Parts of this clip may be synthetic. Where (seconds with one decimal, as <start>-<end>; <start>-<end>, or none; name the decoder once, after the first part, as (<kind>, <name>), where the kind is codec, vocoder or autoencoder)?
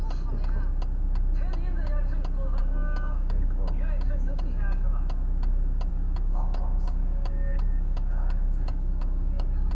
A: 2.6-4.9 (codec, DAC); 5.9-9.7